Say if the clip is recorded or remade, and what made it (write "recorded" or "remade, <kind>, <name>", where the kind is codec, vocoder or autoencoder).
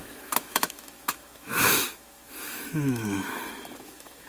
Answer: remade, autoencoder, DAC-VAE